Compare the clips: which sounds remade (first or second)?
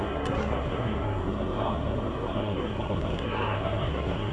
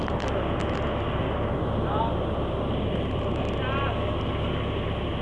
first